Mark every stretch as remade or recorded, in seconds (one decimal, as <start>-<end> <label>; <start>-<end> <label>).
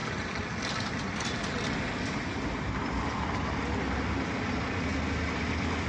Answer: 0.0-5.9 recorded